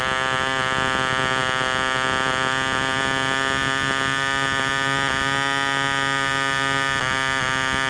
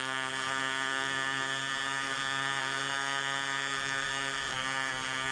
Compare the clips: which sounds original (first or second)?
first